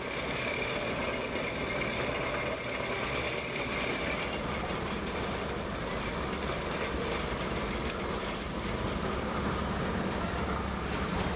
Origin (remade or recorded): recorded